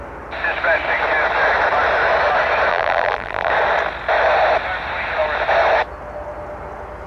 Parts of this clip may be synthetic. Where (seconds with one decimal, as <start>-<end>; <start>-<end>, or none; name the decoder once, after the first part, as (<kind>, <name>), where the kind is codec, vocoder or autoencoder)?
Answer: 2.7-3.5 (vocoder, BigVGAN v2)